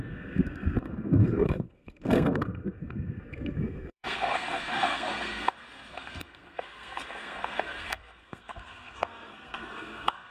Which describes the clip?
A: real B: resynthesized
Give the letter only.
B